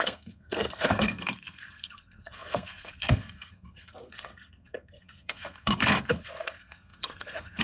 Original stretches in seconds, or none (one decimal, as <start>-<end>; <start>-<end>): none